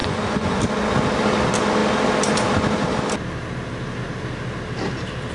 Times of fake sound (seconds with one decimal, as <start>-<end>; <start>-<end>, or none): 0.0-0.6